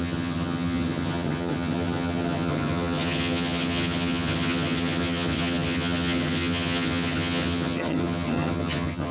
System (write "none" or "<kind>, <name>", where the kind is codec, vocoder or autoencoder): vocoder, HiFi-GAN